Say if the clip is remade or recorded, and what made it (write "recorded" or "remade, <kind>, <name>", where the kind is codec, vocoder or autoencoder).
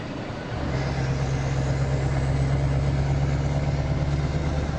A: recorded